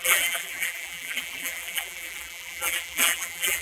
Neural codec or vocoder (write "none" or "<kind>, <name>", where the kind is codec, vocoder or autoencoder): vocoder, BigVGAN v2